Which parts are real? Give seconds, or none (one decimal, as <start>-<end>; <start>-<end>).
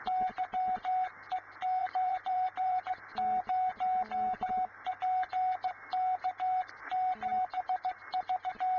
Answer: 0.0-1.8; 2.8-8.8